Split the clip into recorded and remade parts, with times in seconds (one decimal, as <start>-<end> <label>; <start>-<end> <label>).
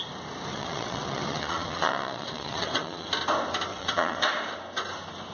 0.0-0.5 recorded; 0.5-3.1 remade; 3.1-3.7 recorded; 3.7-4.3 remade; 4.3-5.3 recorded